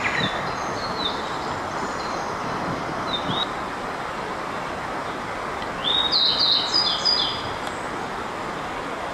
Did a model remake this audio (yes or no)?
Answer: no